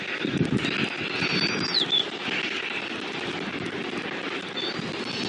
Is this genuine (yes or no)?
yes